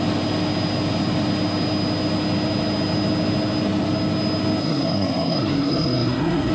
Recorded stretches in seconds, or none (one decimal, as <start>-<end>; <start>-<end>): 0.0-4.6